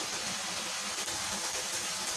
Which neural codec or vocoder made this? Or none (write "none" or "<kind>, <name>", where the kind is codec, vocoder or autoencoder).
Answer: none